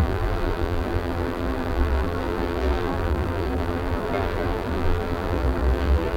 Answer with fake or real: fake